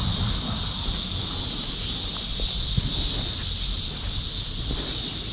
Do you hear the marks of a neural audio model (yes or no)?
no